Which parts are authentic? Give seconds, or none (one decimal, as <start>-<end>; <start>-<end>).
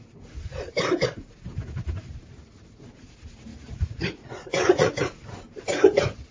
0.0-3.5; 4.9-6.3